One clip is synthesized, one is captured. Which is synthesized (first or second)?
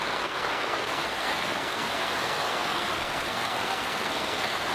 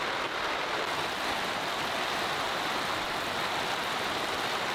first